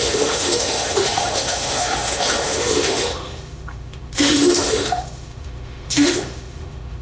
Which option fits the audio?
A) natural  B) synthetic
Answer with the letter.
B